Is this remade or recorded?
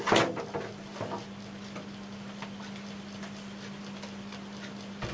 recorded